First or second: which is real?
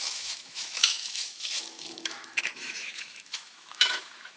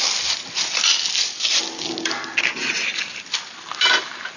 second